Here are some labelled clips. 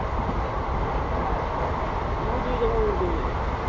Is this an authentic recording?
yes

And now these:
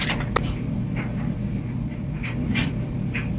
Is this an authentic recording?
no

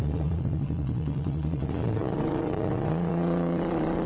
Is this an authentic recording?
no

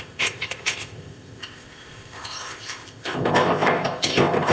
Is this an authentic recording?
no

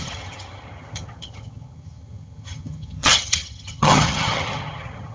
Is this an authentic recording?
no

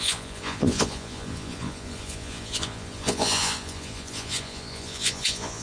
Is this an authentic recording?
no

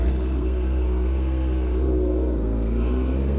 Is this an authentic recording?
no